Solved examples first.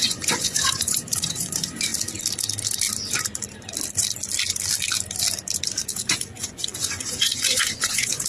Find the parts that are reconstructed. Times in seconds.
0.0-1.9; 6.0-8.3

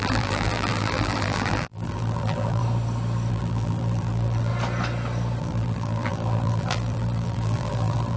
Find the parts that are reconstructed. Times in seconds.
0.0-2.6; 3.3-4.5; 5.4-8.2

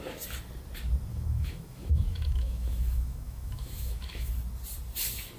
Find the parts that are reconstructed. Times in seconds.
1.1-4.3

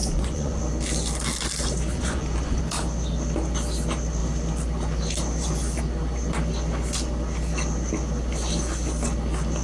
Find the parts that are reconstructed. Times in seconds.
0.0-0.6; 1.9-2.6

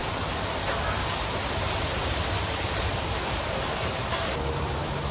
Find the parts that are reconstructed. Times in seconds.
none

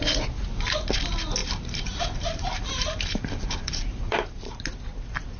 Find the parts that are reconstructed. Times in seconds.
1.4-4.6

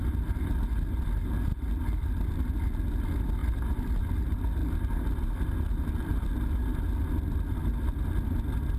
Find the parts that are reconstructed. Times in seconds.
3.4-4.1; 4.6-6.8

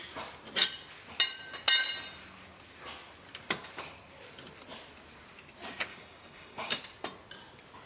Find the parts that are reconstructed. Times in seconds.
5.9-6.8